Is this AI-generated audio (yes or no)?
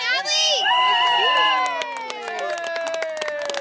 no